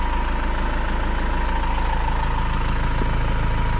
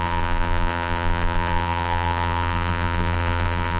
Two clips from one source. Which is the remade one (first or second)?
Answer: second